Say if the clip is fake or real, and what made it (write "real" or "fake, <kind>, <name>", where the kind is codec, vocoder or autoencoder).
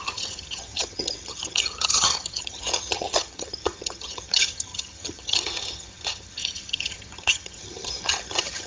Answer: fake, vocoder, HiFi-GAN